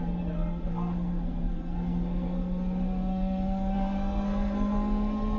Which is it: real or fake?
fake